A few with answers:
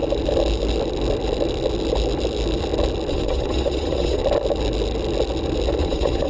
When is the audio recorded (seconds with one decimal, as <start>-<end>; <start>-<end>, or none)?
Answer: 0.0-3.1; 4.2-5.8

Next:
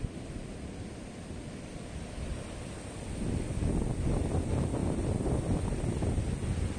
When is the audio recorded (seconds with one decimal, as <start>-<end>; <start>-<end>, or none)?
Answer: 0.0-6.8

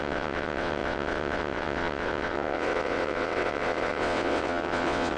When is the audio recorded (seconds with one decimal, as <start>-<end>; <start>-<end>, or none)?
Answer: none

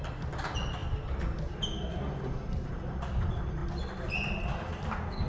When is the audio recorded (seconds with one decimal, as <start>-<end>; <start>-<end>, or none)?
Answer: 0.0-5.3